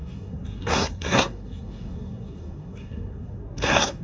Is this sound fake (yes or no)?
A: yes